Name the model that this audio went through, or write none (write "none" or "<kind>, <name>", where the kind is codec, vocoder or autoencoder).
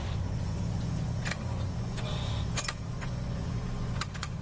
vocoder, Vocos